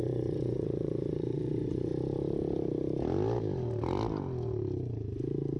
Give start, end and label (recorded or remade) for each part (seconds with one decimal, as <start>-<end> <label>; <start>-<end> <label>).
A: 0.0-1.9 remade; 1.9-5.6 recorded